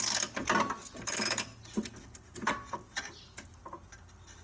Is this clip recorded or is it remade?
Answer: recorded